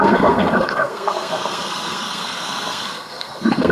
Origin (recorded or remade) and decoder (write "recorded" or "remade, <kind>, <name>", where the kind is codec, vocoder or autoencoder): remade, codec, SNAC